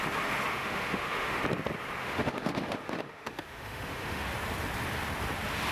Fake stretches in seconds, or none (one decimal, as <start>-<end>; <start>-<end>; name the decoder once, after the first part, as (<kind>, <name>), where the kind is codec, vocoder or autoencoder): 0.5-1.4 (autoencoder, DAC-VAE); 2.0-4.2